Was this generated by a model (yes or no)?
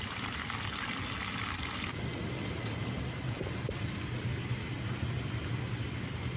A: no